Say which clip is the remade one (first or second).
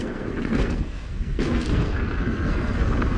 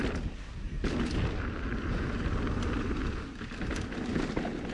first